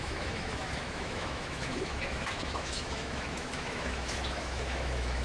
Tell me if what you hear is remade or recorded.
remade